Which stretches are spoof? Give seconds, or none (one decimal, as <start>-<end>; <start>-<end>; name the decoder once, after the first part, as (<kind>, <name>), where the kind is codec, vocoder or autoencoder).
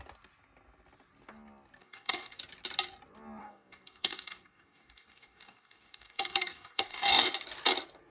1.8-2.4 (codec, DAC); 3.4-7.3